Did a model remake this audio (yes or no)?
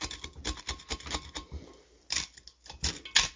no